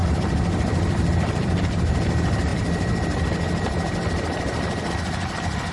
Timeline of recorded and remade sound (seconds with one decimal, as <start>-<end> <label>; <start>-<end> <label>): 0.0-5.7 remade